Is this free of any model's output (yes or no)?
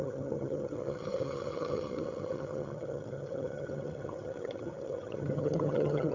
no